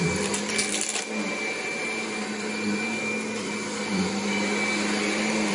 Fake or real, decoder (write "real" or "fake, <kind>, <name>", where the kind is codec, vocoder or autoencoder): real